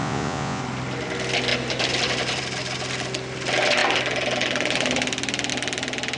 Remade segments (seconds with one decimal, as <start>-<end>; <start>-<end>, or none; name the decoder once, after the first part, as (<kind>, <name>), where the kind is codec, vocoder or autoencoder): 0.0-0.6 (vocoder, Vocos)